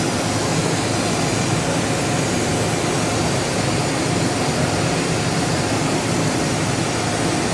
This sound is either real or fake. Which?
real